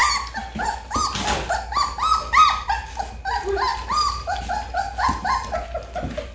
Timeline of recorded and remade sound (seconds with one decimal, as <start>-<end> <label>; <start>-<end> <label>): 0.0-6.3 recorded